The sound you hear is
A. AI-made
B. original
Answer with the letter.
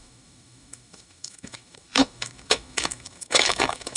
A